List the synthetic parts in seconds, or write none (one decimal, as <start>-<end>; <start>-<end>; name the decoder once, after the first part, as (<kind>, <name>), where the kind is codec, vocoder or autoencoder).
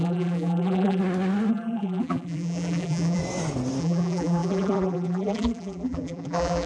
0.0-1.0 (vocoder, BigVGAN v2); 1.5-3.2; 3.8-6.7